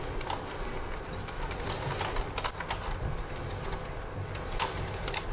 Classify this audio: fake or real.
real